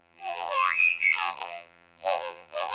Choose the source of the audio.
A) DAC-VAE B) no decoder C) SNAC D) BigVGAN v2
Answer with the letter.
D